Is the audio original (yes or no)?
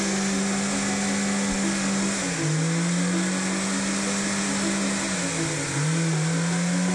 yes